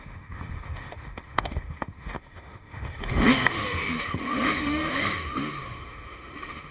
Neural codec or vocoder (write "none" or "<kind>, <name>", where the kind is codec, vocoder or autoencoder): autoencoder, DAC-VAE